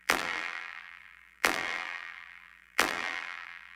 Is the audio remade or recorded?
remade